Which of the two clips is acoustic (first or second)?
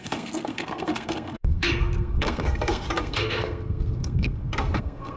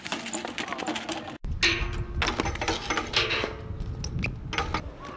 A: second